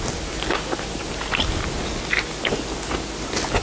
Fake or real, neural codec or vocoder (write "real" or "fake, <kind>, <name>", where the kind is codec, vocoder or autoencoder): real